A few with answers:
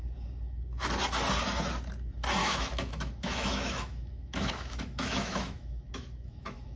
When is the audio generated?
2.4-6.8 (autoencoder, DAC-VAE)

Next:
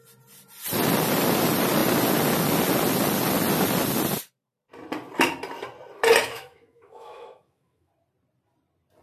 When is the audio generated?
6.2-7.9 (autoencoder, DAC-VAE)

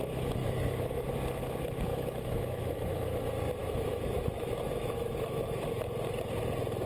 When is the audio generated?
0.4-1.1 (autoencoder, DAC-VAE); 1.9-3.1; 3.6-5.6

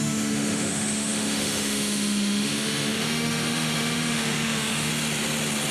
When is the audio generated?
0.0-4.9 (autoencoder, DAC-VAE)

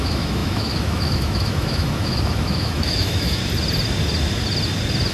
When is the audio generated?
0.0-3.4 (autoencoder, DAC-VAE)

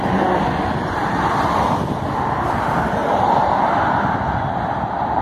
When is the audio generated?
none

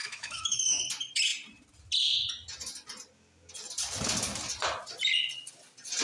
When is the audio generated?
0.0-0.8 (autoencoder, DAC-VAE)

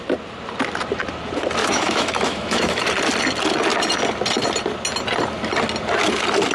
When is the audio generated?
1.6-2.8 (autoencoder, DAC-VAE)